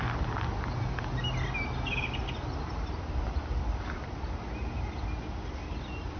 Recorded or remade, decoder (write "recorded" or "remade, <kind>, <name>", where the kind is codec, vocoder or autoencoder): recorded